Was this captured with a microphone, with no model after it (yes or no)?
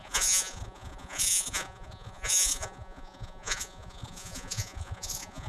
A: no